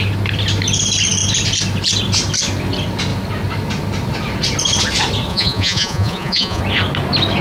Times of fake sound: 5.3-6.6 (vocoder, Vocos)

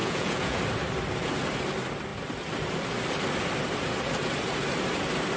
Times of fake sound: 0.0-0.6 (vocoder, Vocos)

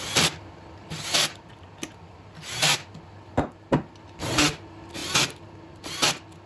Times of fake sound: none

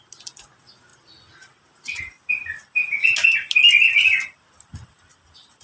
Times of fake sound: none